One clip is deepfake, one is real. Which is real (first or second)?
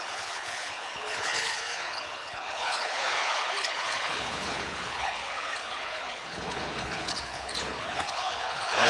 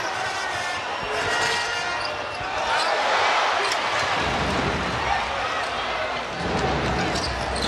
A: second